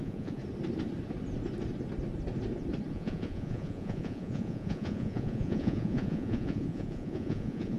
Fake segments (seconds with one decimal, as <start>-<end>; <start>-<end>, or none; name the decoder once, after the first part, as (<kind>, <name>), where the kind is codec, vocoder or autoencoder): 0.0-0.4 (vocoder, Vocos); 2.9-7.8